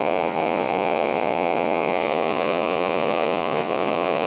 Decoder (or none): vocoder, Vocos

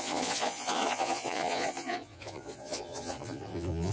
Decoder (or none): vocoder, Vocos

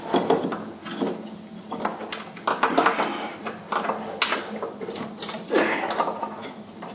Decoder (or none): none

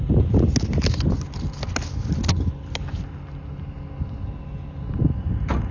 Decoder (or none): none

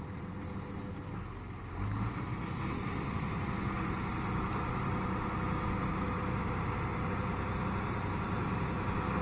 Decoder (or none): none